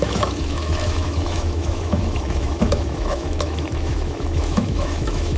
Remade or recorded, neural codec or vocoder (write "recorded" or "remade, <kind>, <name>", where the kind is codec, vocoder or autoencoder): remade, autoencoder, DAC-VAE